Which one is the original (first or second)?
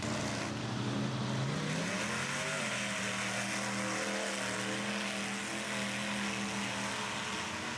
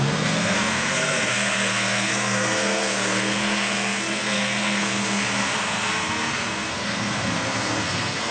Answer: first